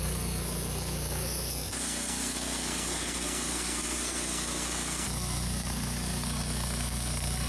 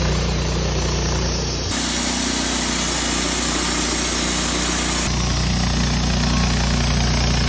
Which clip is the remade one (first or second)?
first